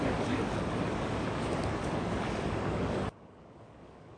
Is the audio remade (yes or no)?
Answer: yes